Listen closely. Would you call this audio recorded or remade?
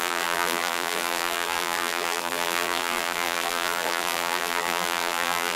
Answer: remade